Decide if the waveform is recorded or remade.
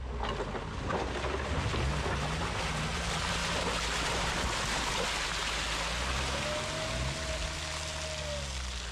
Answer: recorded